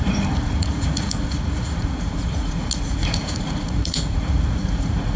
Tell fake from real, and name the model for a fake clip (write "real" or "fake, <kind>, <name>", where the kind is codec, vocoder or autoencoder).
fake, vocoder, Vocos